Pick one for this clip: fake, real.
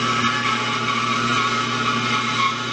real